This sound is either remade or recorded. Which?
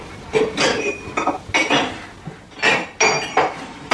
recorded